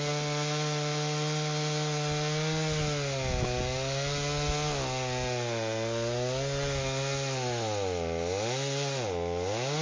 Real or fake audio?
real